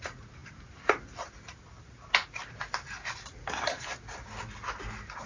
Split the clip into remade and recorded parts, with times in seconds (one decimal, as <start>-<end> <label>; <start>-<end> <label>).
0.0-5.3 recorded